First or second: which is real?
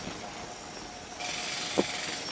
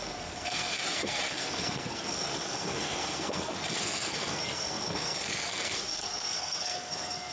first